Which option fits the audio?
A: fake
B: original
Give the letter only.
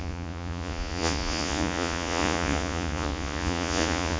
A